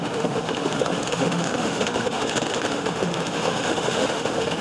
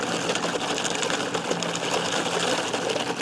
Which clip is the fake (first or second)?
first